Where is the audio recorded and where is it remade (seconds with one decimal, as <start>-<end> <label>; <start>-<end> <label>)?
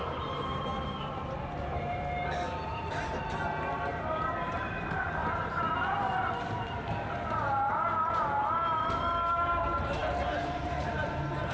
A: 0.0-0.7 remade; 0.7-4.0 recorded; 4.0-5.2 remade; 5.2-9.3 recorded; 9.3-11.5 remade